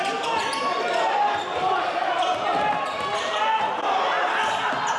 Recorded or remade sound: recorded